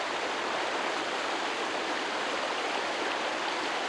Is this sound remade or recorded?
recorded